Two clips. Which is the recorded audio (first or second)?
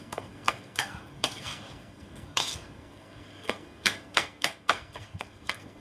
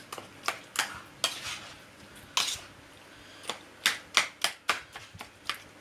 second